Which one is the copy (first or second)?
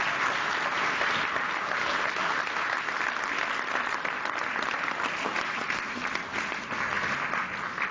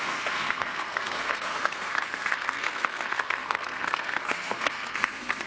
second